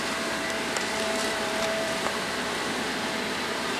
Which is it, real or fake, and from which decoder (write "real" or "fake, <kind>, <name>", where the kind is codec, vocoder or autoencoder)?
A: fake, vocoder, BigVGAN v2